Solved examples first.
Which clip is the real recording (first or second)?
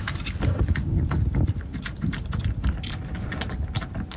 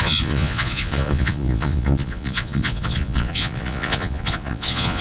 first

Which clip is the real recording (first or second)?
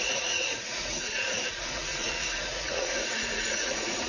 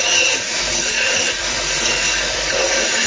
second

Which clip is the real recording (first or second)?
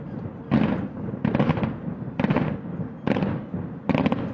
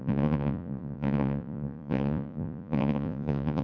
first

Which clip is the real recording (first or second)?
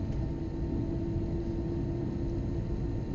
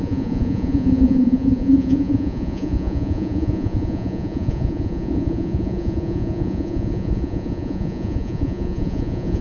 first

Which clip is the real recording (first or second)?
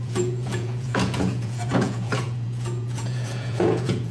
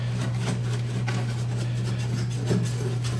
second